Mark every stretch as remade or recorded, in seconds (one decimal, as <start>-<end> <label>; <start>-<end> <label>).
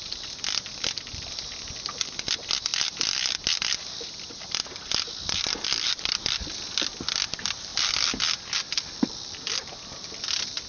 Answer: 0.0-10.7 recorded